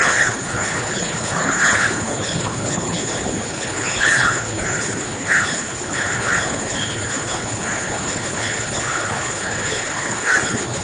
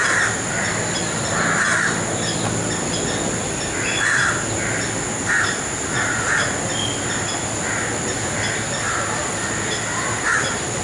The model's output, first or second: first